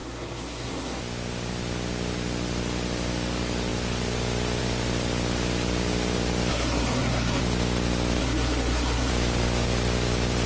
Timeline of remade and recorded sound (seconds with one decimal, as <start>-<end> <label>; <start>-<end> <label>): 0.0-1.0 remade; 1.0-6.5 recorded; 6.5-7.4 remade; 7.4-8.2 recorded; 8.2-9.1 remade; 9.1-10.5 recorded